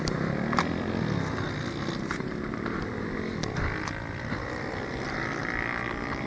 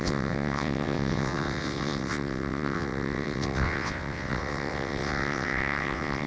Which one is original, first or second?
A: first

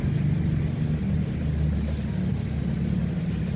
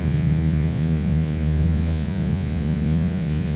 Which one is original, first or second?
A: first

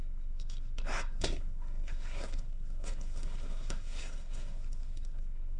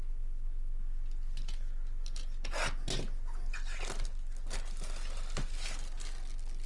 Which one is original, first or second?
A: second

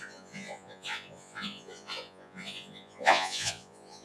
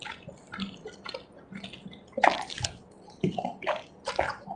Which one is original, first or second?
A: second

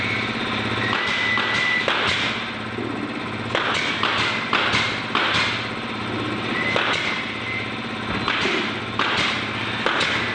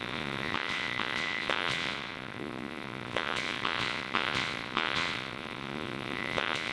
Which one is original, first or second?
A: first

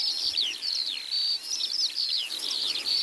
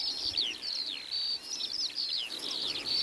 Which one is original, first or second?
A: second